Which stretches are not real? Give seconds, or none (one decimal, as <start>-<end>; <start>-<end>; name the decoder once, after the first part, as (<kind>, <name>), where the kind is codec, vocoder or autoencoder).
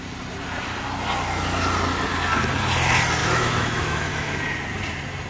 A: 3.2-4.4 (autoencoder, DAC-VAE)